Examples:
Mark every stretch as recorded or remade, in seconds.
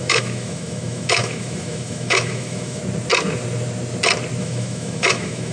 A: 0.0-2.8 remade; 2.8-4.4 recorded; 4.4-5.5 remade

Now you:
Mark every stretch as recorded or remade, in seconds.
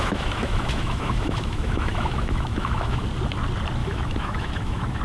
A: 0.0-3.0 remade; 3.0-3.8 recorded; 3.8-5.0 remade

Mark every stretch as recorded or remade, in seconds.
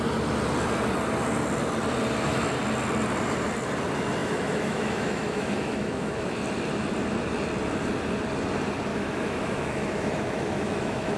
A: 0.0-4.2 recorded; 4.2-6.4 remade; 6.4-8.9 recorded; 8.9-11.2 remade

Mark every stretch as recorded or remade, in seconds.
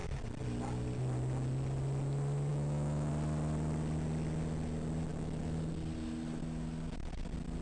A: 0.0-2.5 recorded; 2.5-3.1 remade; 3.1-5.1 recorded; 5.1-5.7 remade; 5.7-7.6 recorded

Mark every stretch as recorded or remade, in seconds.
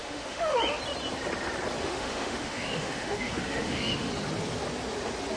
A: 0.0-0.6 remade; 0.6-1.8 recorded; 1.8-4.1 remade; 4.1-5.4 recorded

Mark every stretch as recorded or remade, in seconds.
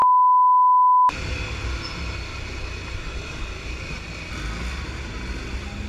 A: 0.0-1.1 remade; 1.1-5.9 recorded